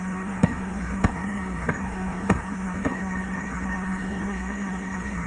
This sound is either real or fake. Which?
fake